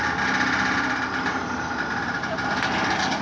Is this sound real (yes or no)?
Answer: yes